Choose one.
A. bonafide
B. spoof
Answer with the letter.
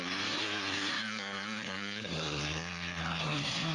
B